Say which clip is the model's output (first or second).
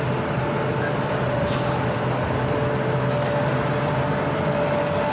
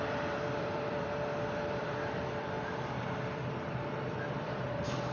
second